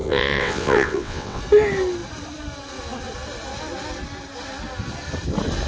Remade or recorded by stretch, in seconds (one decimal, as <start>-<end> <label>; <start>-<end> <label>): 0.0-1.4 remade; 1.4-5.7 recorded